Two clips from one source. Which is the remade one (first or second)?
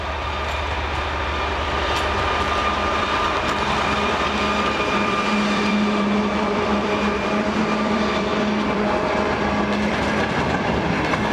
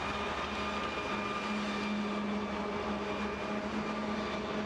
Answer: first